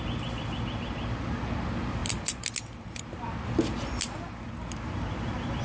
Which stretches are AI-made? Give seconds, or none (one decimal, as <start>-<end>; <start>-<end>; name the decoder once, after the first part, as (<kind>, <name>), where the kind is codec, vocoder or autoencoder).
none